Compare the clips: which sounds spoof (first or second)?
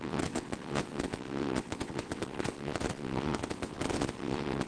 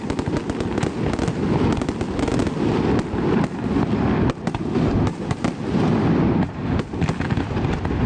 first